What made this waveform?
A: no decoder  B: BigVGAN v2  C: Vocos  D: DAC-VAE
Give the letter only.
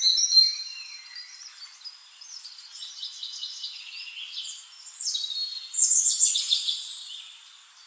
A